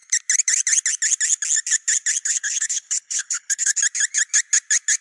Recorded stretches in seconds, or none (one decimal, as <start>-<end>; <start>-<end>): 0.0-2.2; 3.8-5.0